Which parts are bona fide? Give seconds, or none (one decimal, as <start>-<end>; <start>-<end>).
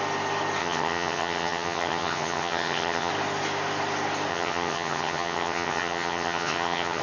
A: 0.0-0.6; 3.1-4.3